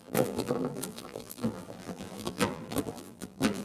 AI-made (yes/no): yes